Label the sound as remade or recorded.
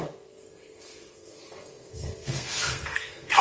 remade